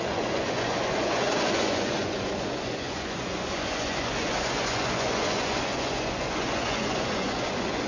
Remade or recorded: remade